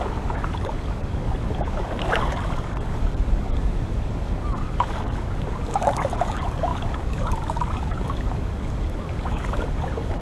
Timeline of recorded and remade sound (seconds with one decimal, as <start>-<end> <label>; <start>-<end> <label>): 0.0-10.2 remade